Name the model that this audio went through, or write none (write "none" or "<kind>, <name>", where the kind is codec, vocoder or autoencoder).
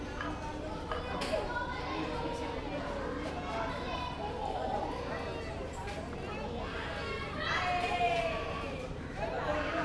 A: none